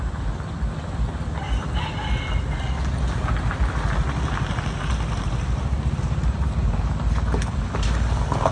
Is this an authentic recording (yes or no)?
yes